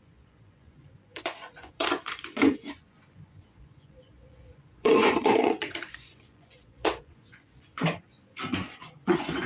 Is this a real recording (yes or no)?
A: no